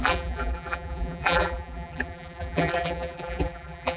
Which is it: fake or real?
fake